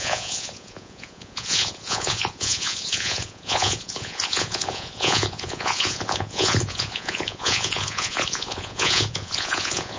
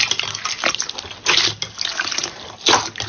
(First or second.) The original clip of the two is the second